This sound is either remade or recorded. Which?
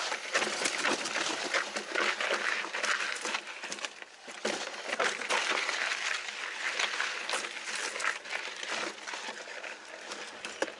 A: recorded